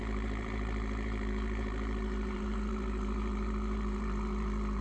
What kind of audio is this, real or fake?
fake